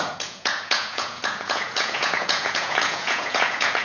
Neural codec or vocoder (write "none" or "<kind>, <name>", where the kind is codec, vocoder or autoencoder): vocoder, Vocos